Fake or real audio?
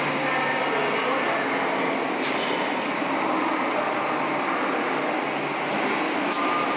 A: real